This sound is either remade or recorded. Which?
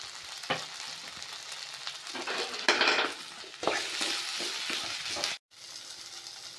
recorded